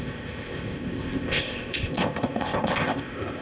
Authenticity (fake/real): fake